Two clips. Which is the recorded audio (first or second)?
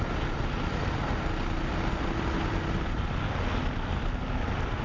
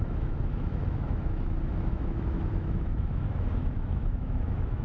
first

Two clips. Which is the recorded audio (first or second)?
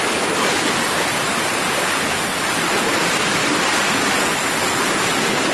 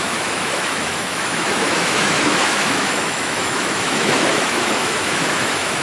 first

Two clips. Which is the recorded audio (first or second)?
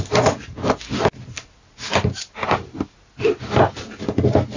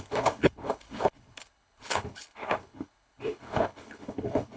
first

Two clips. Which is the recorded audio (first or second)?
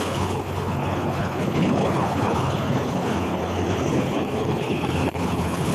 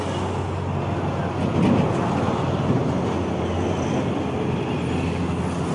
second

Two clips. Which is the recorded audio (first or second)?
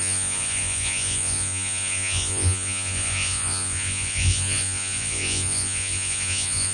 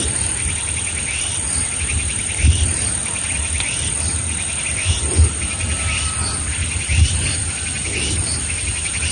second